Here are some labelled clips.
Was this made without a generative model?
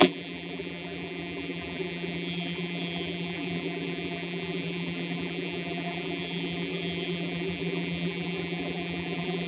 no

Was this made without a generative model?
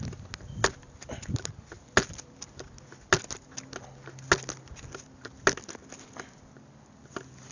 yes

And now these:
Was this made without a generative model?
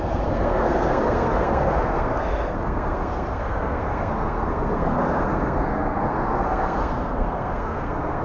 no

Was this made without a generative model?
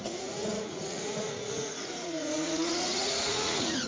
no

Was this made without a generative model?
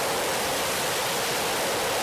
yes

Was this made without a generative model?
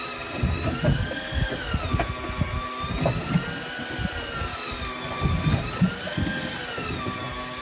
yes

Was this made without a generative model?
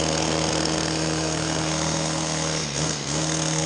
no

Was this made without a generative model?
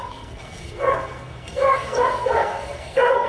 no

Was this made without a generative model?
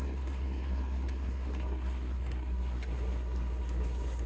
no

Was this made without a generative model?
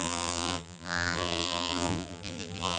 no